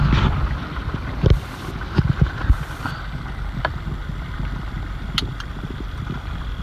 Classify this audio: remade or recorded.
recorded